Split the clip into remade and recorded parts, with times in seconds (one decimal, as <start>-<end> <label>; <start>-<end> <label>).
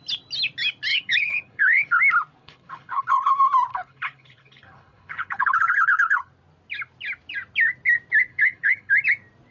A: 0.0-0.9 recorded; 0.9-2.0 remade; 2.0-2.4 recorded; 2.4-3.3 remade; 3.3-3.7 recorded; 3.7-6.3 remade; 6.3-8.3 recorded; 8.3-8.9 remade; 8.9-9.5 recorded